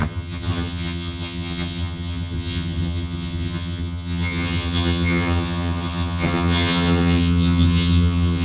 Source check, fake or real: fake